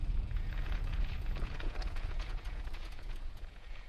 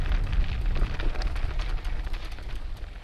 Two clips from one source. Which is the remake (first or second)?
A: first